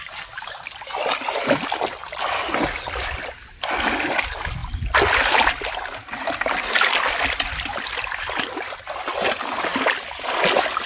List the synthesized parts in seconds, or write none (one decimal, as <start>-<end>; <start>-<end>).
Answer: none